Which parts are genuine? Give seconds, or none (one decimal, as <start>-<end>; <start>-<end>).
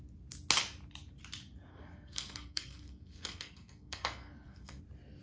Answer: 0.0-1.7; 4.8-5.2